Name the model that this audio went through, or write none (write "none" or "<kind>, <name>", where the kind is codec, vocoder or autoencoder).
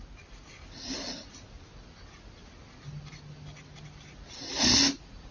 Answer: none